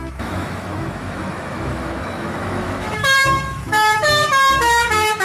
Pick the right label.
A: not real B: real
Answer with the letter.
A